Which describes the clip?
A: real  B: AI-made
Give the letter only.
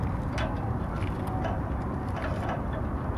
A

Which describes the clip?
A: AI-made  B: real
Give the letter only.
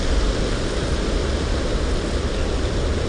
B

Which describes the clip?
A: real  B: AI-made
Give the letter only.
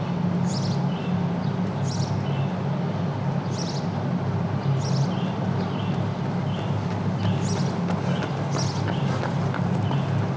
A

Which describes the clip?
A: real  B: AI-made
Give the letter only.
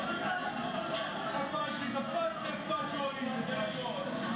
A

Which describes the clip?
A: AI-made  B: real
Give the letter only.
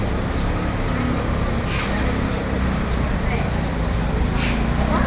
B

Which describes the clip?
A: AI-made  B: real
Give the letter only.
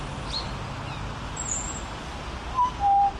B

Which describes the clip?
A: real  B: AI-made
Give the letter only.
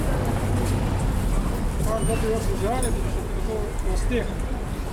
A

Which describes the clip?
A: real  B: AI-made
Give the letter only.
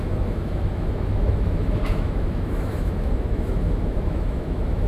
B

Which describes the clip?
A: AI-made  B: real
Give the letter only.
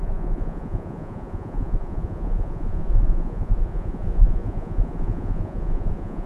A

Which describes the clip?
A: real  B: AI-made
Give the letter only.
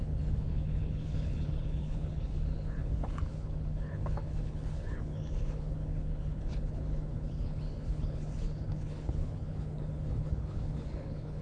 B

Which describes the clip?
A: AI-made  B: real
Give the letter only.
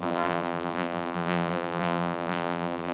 A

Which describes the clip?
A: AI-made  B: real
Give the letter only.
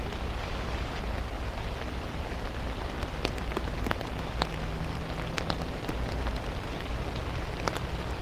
B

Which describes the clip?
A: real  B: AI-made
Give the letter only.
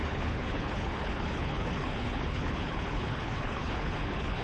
B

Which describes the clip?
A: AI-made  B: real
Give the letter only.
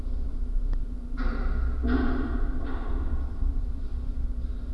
B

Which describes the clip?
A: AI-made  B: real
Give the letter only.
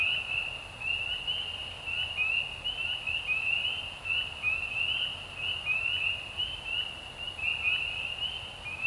B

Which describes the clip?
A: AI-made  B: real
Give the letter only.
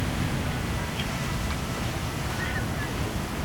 B